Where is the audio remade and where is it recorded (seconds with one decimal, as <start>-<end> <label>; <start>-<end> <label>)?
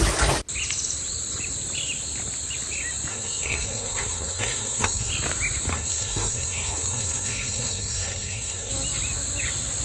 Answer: 0.0-3.1 recorded; 3.1-5.1 remade; 5.1-5.7 recorded; 5.7-8.7 remade; 8.7-9.8 recorded